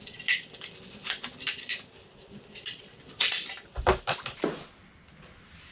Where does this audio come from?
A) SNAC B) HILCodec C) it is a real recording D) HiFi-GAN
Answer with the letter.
C